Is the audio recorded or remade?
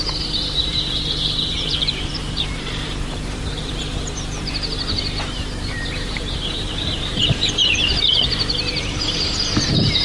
remade